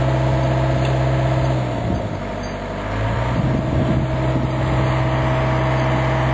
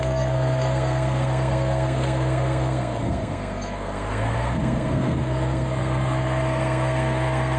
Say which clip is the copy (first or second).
second